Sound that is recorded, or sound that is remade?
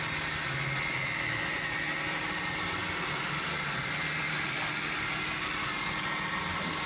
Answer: recorded